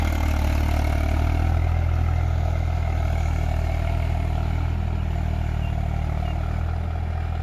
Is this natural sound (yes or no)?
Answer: yes